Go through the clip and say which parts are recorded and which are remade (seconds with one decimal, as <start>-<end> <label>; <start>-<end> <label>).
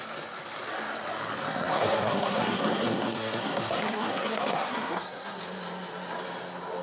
0.0-1.4 recorded; 1.4-5.4 remade; 5.4-6.8 recorded